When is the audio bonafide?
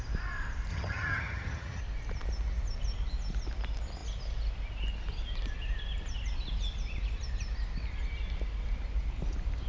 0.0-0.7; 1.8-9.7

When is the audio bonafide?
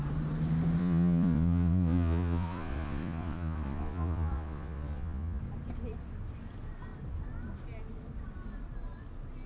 0.0-0.8; 5.4-9.5